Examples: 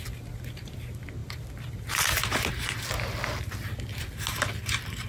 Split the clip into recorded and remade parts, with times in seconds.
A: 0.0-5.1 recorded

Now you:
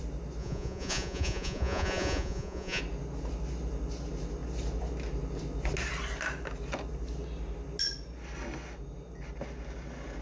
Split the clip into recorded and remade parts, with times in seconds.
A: 0.0-0.4 recorded; 0.4-2.8 remade; 2.8-10.2 recorded

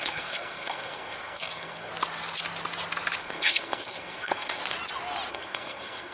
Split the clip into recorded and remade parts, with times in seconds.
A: 0.0-1.9 remade; 1.9-3.2 recorded; 3.2-4.6 remade; 4.6-5.3 recorded; 5.3-6.1 remade

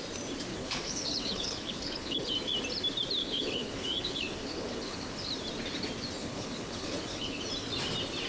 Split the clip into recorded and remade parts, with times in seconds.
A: 0.0-0.5 recorded; 0.5-2.3 remade; 2.3-3.2 recorded; 3.2-5.3 remade; 5.3-6.2 recorded; 6.2-7.4 remade; 7.4-8.3 recorded

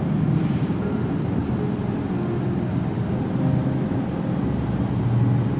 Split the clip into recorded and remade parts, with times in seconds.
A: 0.0-1.4 remade; 1.4-4.1 recorded; 4.1-5.6 remade

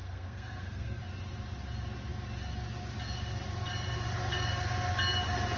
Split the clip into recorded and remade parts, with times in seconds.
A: 0.0-1.0 remade; 1.0-5.6 recorded

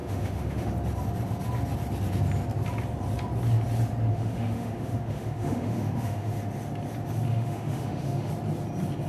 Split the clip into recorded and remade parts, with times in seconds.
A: 0.0-0.7 remade; 0.7-4.1 recorded; 4.1-6.4 remade; 6.4-7.3 recorded; 7.3-8.3 remade; 8.3-9.1 recorded